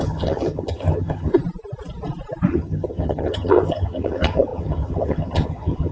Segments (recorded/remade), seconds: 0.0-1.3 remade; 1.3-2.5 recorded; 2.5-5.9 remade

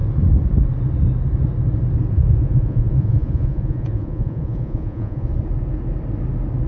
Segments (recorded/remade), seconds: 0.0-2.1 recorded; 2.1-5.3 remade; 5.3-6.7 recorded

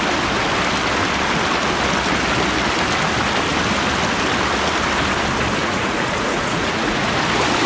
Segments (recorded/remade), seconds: 0.0-5.6 recorded; 5.6-7.2 remade; 7.2-7.7 recorded

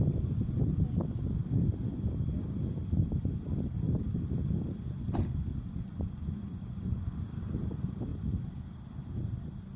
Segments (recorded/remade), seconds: 0.0-5.5 recorded; 5.5-7.1 remade; 7.1-9.8 recorded